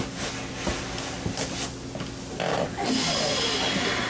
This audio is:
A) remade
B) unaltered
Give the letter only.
B